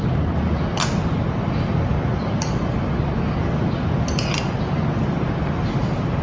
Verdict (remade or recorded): recorded